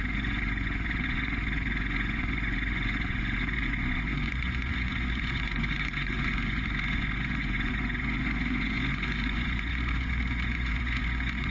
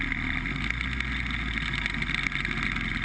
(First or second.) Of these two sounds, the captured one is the second